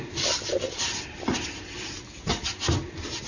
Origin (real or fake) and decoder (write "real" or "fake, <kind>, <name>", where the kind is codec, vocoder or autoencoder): real